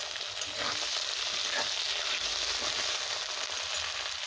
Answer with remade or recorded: recorded